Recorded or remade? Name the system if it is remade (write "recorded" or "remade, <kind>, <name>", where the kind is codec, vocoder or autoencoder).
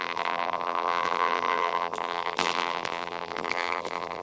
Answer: remade, vocoder, BigVGAN v2